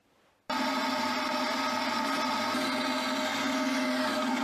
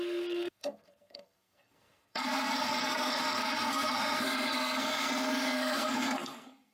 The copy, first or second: second